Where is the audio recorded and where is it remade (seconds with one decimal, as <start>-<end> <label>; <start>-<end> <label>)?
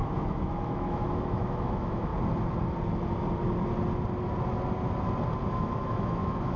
0.0-2.1 remade; 2.1-5.5 recorded; 5.5-6.6 remade